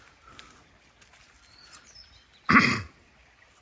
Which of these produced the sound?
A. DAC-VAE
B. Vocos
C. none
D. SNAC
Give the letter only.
C